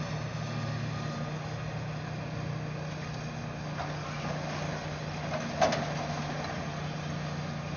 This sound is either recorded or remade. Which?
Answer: recorded